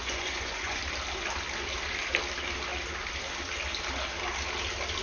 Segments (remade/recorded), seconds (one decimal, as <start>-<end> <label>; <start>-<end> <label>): 0.0-0.8 remade; 0.8-5.0 recorded